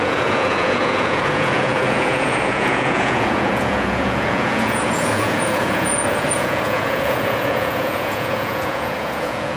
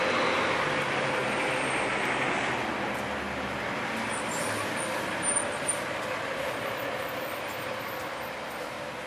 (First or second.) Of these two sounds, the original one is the second